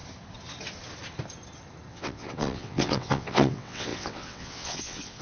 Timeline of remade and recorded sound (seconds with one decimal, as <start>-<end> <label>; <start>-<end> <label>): 0.0-1.9 recorded; 1.9-5.2 remade

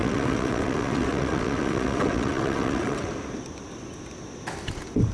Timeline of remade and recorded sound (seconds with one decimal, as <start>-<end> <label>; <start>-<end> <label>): 0.0-3.1 remade; 3.1-5.1 recorded

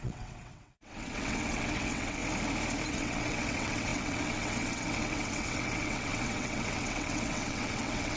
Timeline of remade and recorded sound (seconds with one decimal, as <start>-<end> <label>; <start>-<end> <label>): 0.0-2.2 remade; 2.2-2.9 recorded; 2.9-8.2 remade

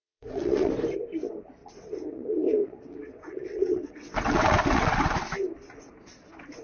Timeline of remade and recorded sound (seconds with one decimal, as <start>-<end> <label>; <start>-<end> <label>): 0.0-0.7 remade; 0.7-1.6 recorded; 1.6-5.0 remade; 5.0-6.6 recorded